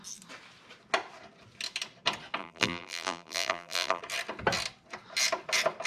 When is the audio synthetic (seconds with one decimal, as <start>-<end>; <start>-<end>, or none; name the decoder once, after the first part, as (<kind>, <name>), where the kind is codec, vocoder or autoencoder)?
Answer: 2.4-4.0 (vocoder, BigVGAN v2)